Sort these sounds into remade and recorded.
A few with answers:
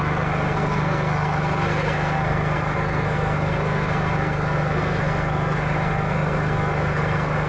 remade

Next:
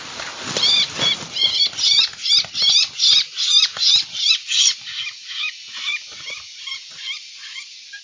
recorded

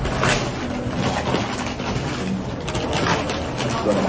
recorded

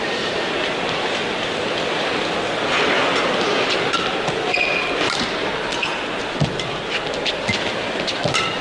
recorded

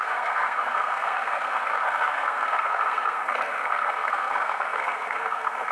remade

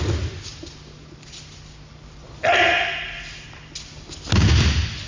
recorded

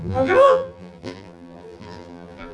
remade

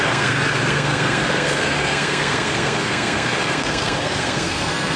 remade